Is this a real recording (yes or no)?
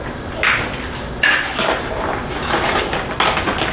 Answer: yes